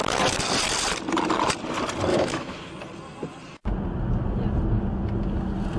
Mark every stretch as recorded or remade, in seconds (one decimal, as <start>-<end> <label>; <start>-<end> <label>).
0.0-2.1 recorded; 2.1-2.7 remade; 2.7-5.8 recorded